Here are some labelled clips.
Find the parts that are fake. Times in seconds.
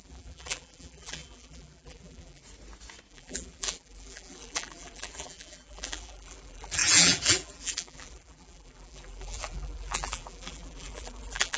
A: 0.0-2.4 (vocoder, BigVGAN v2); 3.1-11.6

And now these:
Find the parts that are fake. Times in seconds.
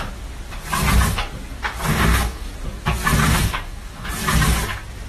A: 1.9-2.5 (codec, DAC); 3.2-4.1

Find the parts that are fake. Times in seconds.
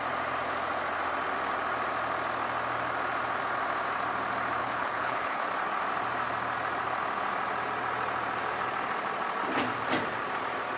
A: 4.6-5.5 (codec, HILCodec)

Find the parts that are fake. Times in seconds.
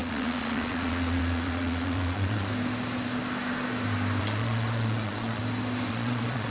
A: 0.0-2.5 (vocoder, Vocos); 4.2-5.4; 5.9-6.5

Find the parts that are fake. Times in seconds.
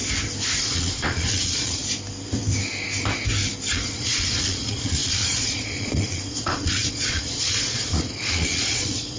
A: 0.6-1.8 (vocoder, Vocos); 3.7-9.2